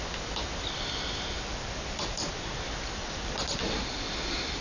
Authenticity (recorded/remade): recorded